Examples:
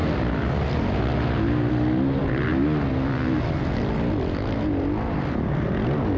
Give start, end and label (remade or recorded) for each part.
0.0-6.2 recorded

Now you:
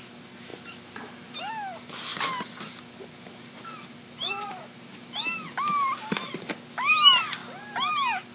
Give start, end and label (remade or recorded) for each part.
0.0-8.3 recorded

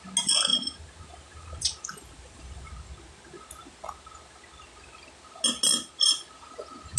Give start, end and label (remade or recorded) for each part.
0.0-0.5 recorded; 0.5-2.7 remade; 2.7-7.0 recorded

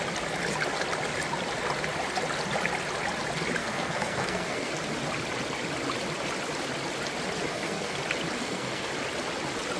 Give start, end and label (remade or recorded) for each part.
0.0-3.6 recorded; 3.6-4.7 remade; 4.7-7.5 recorded; 7.5-8.0 remade; 8.0-8.4 recorded; 8.4-8.9 remade; 8.9-9.8 recorded